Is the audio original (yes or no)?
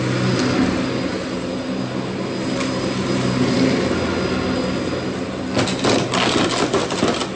yes